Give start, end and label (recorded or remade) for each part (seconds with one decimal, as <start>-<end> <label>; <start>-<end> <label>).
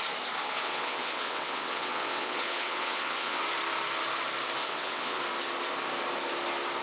0.0-0.4 recorded; 0.4-3.4 remade; 3.4-4.6 recorded; 4.6-5.2 remade; 5.2-6.8 recorded